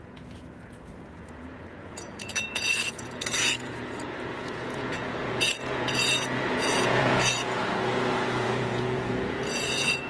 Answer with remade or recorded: remade